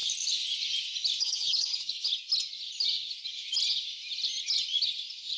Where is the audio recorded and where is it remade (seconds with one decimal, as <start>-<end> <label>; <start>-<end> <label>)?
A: 0.0-1.2 recorded; 1.2-2.1 remade; 2.1-5.4 recorded